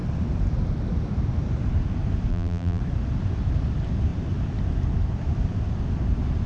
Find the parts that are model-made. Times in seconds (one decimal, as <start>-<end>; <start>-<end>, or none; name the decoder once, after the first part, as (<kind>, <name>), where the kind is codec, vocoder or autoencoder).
2.3-2.8 (vocoder, BigVGAN v2)